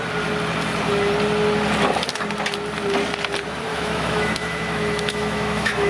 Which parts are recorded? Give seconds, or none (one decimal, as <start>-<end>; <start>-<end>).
0.0-3.7